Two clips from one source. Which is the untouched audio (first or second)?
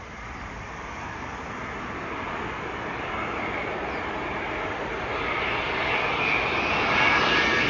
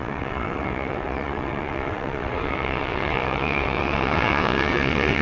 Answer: first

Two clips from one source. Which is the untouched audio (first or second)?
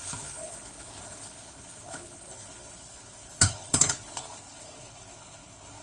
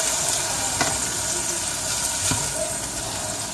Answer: second